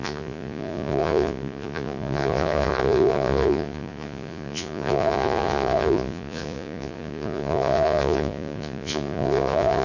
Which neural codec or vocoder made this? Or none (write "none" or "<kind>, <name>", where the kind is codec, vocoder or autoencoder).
vocoder, Vocos